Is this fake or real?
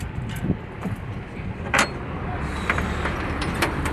fake